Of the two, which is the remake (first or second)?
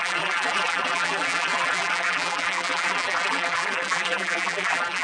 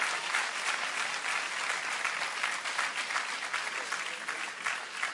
first